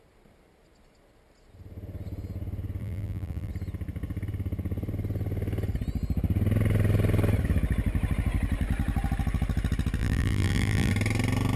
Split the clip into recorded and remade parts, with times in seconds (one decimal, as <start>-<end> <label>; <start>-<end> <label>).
0.0-2.8 recorded; 2.8-3.5 remade; 3.5-10.0 recorded; 10.0-10.9 remade; 10.9-11.6 recorded